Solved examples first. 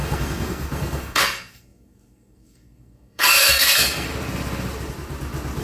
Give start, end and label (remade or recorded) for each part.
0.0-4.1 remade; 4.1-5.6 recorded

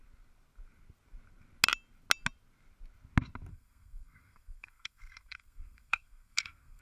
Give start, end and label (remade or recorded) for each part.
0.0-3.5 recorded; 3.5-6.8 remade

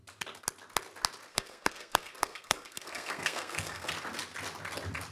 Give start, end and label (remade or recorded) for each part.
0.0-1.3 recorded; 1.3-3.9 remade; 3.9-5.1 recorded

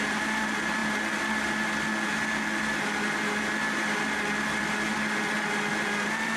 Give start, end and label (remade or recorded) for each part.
0.0-6.4 recorded

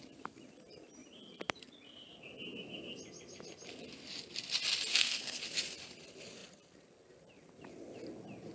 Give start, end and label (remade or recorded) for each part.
0.0-4.9 recorded; 4.9-5.4 remade; 5.4-8.5 recorded

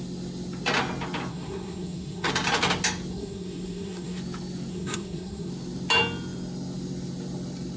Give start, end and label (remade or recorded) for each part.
0.0-1.3 recorded; 1.3-2.3 remade; 2.3-3.1 recorded; 3.1-4.2 remade; 4.2-4.7 recorded; 4.7-5.5 remade; 5.5-7.8 recorded

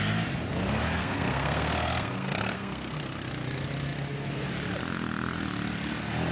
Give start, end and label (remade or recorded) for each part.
0.0-1.0 recorded; 1.0-3.3 remade; 3.3-6.3 recorded